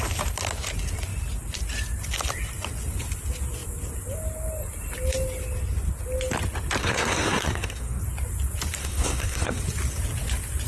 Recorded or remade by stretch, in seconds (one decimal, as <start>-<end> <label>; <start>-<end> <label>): 0.0-6.8 recorded; 6.8-8.0 remade; 8.0-8.8 recorded; 8.8-9.6 remade; 9.6-10.7 recorded

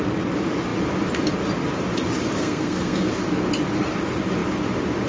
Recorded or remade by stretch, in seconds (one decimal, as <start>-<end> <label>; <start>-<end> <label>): 0.0-2.4 recorded; 2.4-3.1 remade; 3.1-5.1 recorded

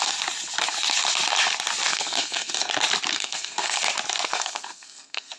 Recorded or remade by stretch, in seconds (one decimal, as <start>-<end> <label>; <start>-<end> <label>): 0.0-1.9 recorded; 1.9-2.7 remade; 2.7-3.1 recorded; 3.1-3.8 remade; 3.8-4.3 recorded; 4.3-5.4 remade

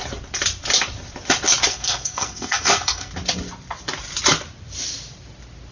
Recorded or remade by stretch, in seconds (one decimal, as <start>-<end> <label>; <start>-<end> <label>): 0.0-1.7 recorded; 1.7-3.1 remade; 3.1-5.7 recorded

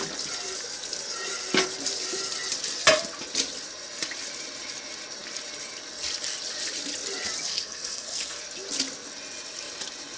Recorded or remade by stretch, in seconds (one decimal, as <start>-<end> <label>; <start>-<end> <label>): 0.0-7.5 recorded; 7.5-8.4 remade; 8.4-10.2 recorded

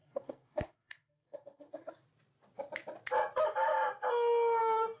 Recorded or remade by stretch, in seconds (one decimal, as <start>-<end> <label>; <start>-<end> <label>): 0.0-1.9 remade; 1.9-5.0 recorded

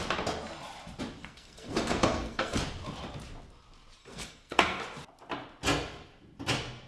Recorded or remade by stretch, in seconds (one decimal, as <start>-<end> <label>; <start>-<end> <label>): 0.0-1.2 recorded; 1.2-2.6 remade; 2.6-4.0 recorded; 4.0-4.8 remade; 4.8-6.9 recorded

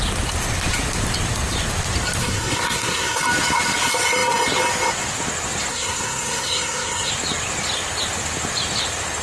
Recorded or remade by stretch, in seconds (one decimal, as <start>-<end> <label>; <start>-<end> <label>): 0.0-2.2 recorded; 2.2-3.2 remade; 3.2-5.7 recorded; 5.7-7.1 remade; 7.1-9.2 recorded